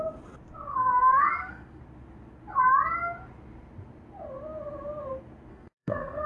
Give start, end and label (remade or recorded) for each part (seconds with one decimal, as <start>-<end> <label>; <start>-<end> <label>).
0.0-0.7 recorded; 0.7-1.8 remade; 1.8-5.5 recorded; 5.5-6.3 remade